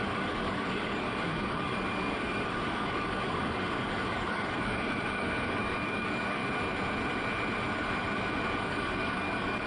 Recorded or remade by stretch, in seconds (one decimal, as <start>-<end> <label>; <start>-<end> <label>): 0.0-6.4 remade; 6.4-8.6 recorded; 8.6-9.7 remade